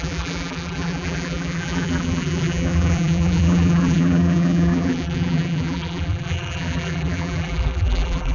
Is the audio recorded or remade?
remade